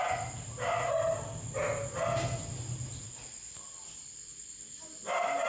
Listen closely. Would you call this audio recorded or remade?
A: recorded